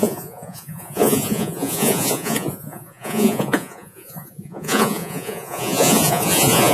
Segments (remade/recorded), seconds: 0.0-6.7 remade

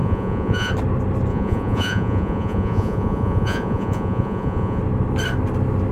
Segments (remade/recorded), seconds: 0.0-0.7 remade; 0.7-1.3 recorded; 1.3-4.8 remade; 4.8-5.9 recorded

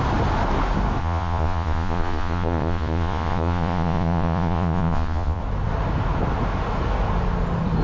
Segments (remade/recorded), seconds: 0.0-1.0 recorded; 1.0-5.4 remade; 5.4-7.8 recorded

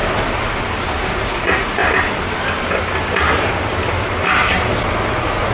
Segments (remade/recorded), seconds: 0.0-1.1 recorded; 1.1-1.8 remade; 1.8-5.1 recorded; 5.1-5.5 remade

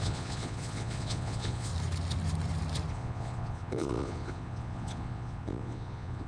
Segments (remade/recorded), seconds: 0.0-1.7 remade; 1.7-2.9 recorded; 2.9-6.3 remade

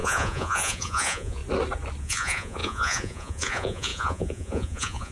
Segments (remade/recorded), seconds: 0.0-1.4 remade; 1.4-2.0 recorded; 2.0-5.1 remade

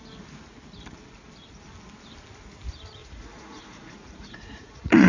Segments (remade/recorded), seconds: 0.0-3.0 recorded; 3.0-5.1 remade

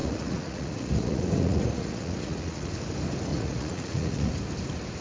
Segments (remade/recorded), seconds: 0.0-2.7 remade; 2.7-3.3 recorded; 3.3-4.3 remade; 4.3-5.0 recorded